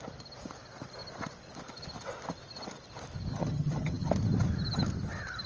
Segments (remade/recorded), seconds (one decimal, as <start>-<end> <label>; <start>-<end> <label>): 0.0-3.3 recorded; 3.3-4.1 remade; 4.1-5.5 recorded

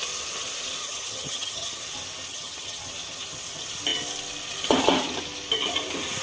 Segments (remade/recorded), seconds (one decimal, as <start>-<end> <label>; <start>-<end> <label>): 0.0-0.8 recorded; 0.8-1.8 remade; 1.8-2.3 recorded; 2.3-2.8 remade; 2.8-6.2 recorded

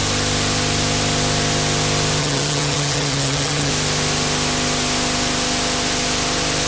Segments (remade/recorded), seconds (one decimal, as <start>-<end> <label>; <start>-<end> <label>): 0.0-2.2 recorded; 2.2-3.7 remade; 3.7-6.7 recorded

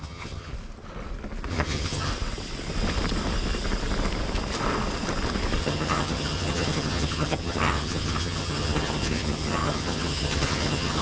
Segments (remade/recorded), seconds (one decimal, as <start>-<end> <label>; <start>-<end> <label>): 0.0-0.5 remade; 0.5-1.5 recorded; 1.5-2.1 remade; 2.1-5.6 recorded; 5.6-11.0 remade

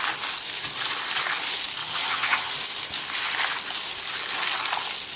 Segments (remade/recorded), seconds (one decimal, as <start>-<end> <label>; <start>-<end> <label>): 0.0-1.8 recorded; 1.8-2.5 remade; 2.5-5.2 recorded

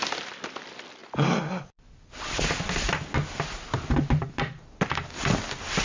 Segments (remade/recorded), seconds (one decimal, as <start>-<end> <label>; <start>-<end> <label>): 0.0-5.8 recorded

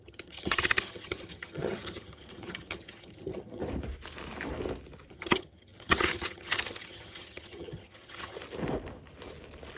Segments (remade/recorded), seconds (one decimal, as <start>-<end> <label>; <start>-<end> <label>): 0.0-3.6 remade; 3.6-5.1 recorded; 5.1-8.4 remade; 8.4-9.8 recorded

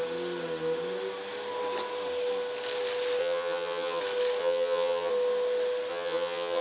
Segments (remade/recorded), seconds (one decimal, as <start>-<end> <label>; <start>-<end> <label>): 0.0-3.2 recorded; 3.2-4.0 remade; 4.0-4.4 recorded; 4.4-5.1 remade; 5.1-5.9 recorded; 5.9-6.6 remade